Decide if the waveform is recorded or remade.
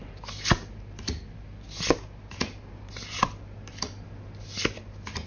recorded